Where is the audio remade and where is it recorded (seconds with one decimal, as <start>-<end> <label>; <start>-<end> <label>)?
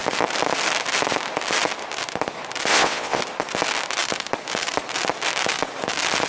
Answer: 0.0-2.7 recorded; 2.7-3.2 remade; 3.2-6.3 recorded